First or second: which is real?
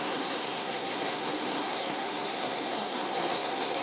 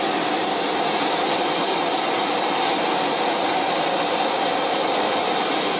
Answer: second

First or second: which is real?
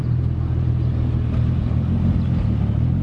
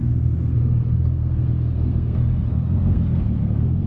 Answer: first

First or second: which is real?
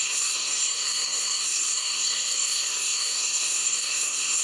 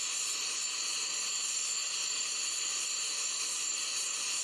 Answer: second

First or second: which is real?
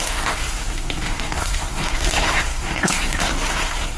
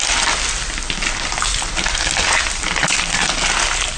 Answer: second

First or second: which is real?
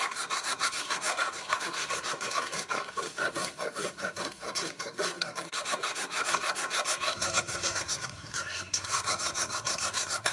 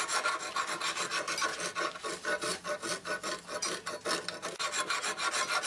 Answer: second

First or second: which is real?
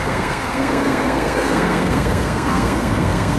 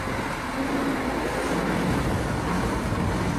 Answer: second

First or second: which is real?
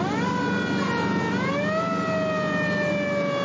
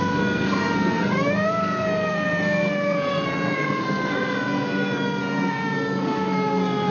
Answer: first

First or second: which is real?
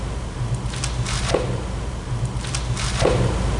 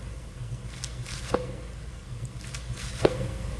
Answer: first